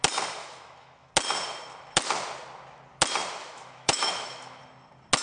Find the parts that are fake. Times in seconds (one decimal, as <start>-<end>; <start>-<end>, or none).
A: 0.4-1.1; 3.4-4.6